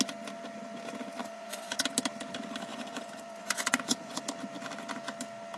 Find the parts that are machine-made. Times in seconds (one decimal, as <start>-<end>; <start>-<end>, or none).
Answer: 1.2-1.8; 2.7-4.2